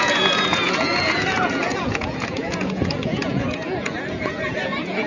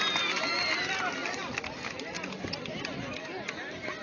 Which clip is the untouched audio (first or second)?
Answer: second